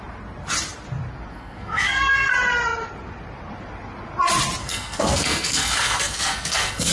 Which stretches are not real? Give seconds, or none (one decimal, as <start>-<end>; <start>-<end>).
1.3-2.3; 4.6-6.9